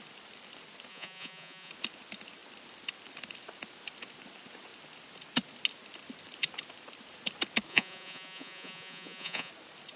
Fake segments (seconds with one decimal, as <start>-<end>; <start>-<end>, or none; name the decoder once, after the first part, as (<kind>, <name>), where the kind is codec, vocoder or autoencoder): 0.9-1.7 (vocoder, Vocos); 7.7-9.5